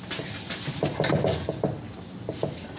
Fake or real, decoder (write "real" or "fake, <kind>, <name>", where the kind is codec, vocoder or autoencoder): real